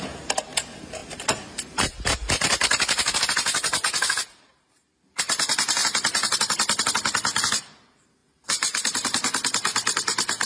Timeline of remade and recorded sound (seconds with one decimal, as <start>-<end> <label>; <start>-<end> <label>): 0.0-1.0 recorded; 1.0-5.2 remade; 5.2-10.5 recorded